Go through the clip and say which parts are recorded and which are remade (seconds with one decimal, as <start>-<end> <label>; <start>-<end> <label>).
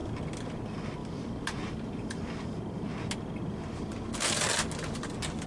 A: 0.0-1.0 recorded; 1.0-2.6 remade; 2.6-5.5 recorded